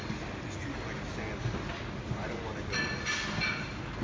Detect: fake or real real